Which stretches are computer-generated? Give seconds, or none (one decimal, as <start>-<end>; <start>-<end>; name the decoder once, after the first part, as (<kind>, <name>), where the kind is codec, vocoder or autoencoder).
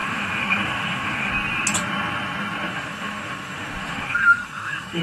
0.0-1.3 (autoencoder, DAC-VAE); 2.7-5.0